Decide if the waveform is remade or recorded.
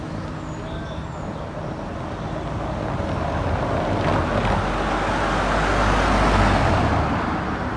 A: recorded